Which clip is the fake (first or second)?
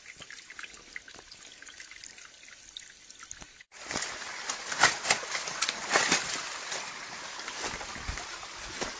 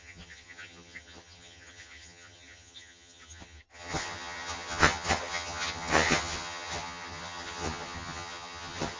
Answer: second